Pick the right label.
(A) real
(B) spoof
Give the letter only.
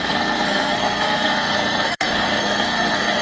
B